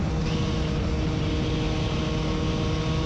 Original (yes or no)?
yes